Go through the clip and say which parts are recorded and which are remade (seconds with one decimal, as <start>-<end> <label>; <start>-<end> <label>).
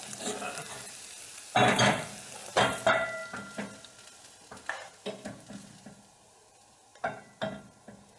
0.0-8.2 recorded